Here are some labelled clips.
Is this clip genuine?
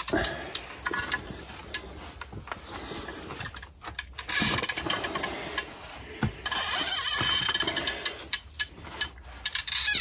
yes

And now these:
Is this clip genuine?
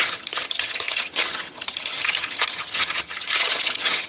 no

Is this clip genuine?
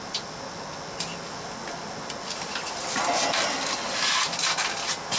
yes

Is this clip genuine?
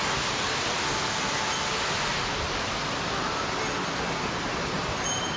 yes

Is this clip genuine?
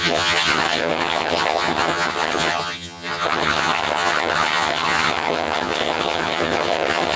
no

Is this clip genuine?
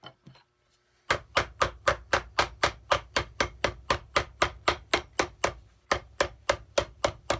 yes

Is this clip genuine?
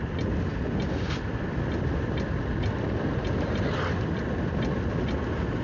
yes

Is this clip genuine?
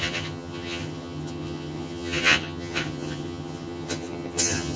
no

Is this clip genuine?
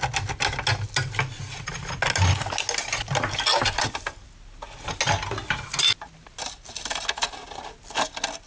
yes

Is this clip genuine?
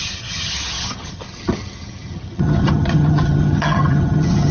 no